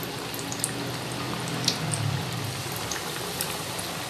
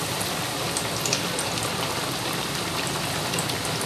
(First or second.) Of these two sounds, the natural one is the first